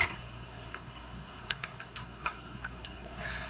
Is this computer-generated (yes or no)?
yes